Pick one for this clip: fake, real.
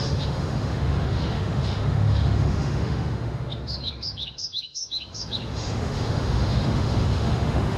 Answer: fake